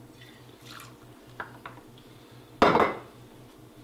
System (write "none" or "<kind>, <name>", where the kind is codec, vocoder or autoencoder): none